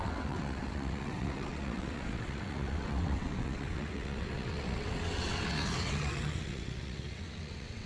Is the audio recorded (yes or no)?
no